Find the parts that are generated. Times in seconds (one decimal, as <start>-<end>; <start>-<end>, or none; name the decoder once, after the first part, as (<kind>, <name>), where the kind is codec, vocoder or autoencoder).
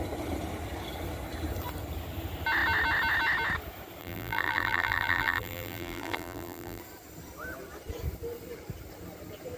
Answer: 4.0-6.8 (vocoder, BigVGAN v2)